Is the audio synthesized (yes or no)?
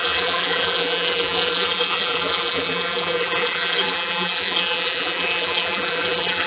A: yes